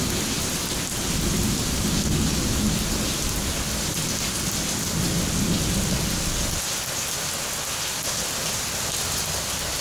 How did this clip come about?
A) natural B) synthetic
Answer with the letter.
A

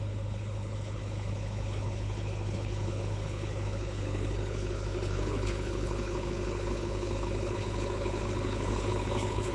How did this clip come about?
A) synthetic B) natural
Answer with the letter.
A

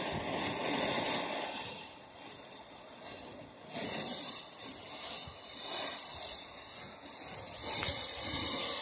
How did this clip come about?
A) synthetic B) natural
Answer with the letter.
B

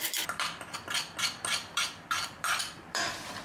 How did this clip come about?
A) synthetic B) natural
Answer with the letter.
A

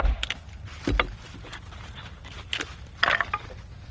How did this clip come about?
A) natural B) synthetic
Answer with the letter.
A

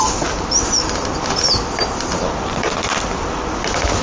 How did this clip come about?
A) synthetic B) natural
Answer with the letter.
B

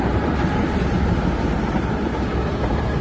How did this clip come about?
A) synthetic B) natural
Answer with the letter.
B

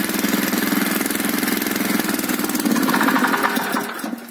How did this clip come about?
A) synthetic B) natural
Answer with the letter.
B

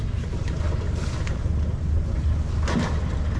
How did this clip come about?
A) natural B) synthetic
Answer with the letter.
B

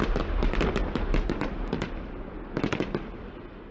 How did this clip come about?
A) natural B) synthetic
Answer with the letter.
A